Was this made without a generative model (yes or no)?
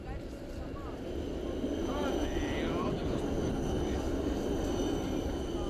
yes